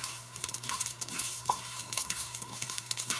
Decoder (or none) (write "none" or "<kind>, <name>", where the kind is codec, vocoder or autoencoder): codec, SNAC